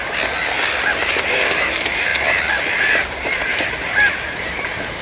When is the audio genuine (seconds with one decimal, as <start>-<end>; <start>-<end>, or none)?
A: 0.0-1.0; 2.1-2.7